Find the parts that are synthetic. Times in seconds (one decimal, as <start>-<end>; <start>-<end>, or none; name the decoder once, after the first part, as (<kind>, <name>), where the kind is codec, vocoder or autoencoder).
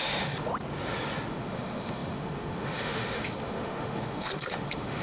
0.0-0.5 (autoencoder, DAC-VAE); 1.3-5.0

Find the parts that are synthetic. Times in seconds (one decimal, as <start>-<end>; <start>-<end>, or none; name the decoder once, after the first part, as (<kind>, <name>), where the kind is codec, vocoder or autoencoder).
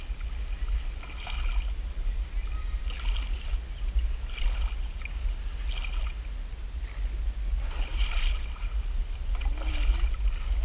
none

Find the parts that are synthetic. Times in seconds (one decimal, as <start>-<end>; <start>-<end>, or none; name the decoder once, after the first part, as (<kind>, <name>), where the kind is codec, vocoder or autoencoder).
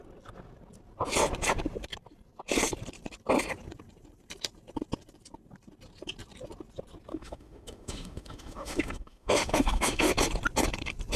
7.1-10.1 (autoencoder, DAC-VAE)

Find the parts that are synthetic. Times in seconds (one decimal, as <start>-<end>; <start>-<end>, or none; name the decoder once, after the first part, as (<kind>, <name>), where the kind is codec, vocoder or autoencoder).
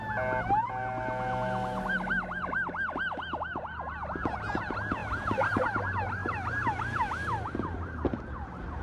none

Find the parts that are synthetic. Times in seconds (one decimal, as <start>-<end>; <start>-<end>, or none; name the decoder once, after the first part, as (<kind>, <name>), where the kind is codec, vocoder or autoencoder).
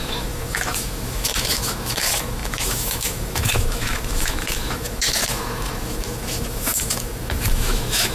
0.0-8.1 (autoencoder, DAC-VAE)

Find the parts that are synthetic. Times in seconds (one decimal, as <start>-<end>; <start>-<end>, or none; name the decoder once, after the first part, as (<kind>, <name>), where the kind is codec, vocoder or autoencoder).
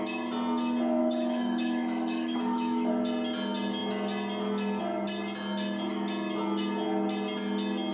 1.0-2.9 (autoencoder, DAC-VAE)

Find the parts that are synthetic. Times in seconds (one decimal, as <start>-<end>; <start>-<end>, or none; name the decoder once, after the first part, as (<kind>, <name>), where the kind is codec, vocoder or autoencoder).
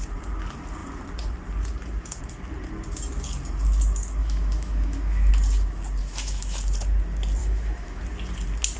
4.2-5.3 (autoencoder, DAC-VAE); 6.0-6.6; 7.4-8.0